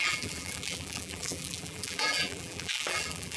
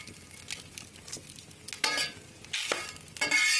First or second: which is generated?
first